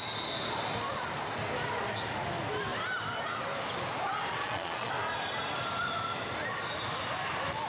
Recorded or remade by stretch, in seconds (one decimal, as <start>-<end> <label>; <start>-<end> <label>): 0.0-4.4 recorded; 4.4-4.9 remade; 4.9-7.7 recorded